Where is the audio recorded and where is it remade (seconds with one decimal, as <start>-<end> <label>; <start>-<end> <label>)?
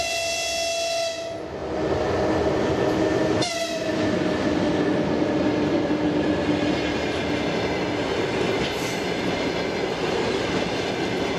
0.0-11.4 recorded